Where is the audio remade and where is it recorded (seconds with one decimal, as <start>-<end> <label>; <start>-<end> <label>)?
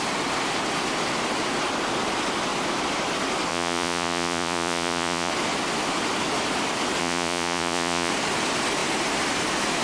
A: 0.0-3.5 recorded; 3.5-5.3 remade; 5.3-7.0 recorded; 7.0-8.1 remade; 8.1-9.8 recorded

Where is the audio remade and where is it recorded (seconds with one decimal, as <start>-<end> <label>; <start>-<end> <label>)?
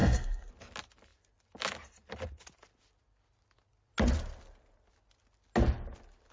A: 0.0-0.5 remade; 0.5-6.3 recorded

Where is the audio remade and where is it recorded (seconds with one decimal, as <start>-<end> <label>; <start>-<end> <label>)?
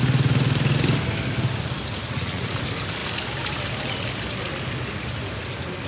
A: 0.0-2.0 recorded; 2.0-2.6 remade; 2.6-5.9 recorded